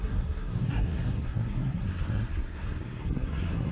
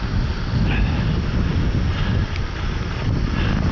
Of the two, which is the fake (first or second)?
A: first